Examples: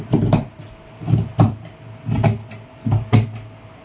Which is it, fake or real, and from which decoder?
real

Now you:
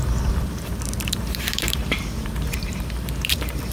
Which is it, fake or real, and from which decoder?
fake, vocoder, BigVGAN v2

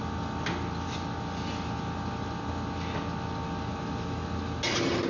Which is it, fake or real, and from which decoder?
real